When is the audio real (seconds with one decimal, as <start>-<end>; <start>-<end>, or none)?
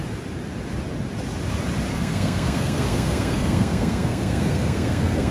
0.0-1.9